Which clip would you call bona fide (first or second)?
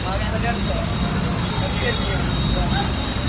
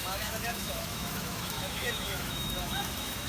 first